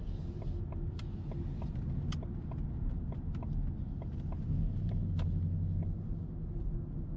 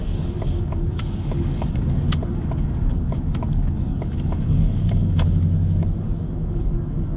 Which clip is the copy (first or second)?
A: second